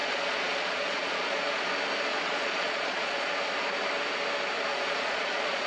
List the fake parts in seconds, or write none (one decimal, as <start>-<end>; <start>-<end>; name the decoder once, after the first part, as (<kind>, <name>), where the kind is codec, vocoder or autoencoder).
0.0-1.7 (vocoder, Vocos); 2.1-3.3; 4.7-5.7